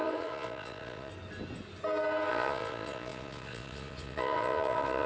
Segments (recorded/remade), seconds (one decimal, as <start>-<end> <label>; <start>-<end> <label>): 0.0-1.1 remade; 1.1-2.3 recorded; 2.3-5.1 remade